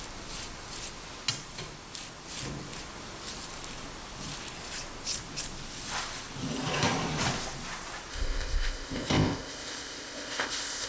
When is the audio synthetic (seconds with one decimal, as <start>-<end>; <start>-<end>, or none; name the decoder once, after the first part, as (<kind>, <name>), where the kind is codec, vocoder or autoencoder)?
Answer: 8.1-10.9 (codec, ZipCodec)